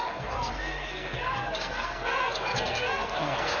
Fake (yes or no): yes